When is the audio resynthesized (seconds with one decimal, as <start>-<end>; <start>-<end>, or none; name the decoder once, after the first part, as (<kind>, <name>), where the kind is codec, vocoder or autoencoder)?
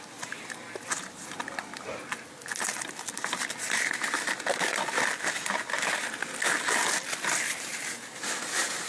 none